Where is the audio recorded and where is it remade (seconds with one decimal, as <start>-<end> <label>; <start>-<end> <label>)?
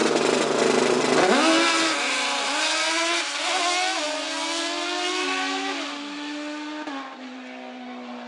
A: 0.0-8.3 recorded